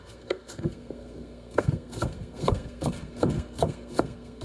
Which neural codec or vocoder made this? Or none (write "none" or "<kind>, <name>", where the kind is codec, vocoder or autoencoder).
codec, SNAC